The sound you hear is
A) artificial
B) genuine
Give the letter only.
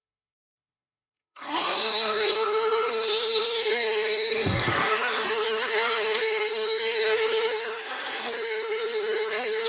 A